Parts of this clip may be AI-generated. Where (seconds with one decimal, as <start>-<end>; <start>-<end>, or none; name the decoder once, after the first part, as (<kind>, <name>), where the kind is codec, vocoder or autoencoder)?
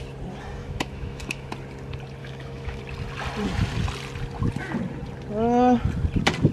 0.6-1.5 (autoencoder, DAC-VAE); 2.2-2.8